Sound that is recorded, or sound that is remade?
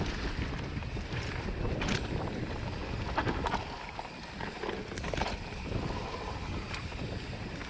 recorded